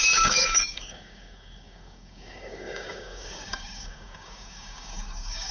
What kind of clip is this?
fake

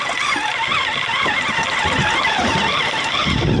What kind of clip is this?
real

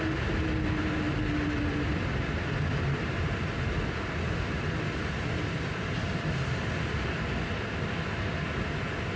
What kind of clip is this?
real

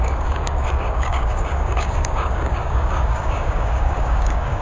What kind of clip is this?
fake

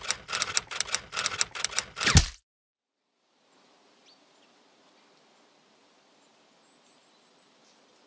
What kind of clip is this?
real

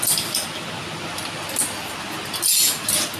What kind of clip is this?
real